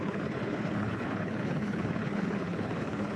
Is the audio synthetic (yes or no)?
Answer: yes